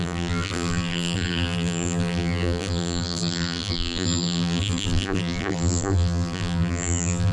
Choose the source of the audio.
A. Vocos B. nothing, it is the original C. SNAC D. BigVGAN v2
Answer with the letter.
D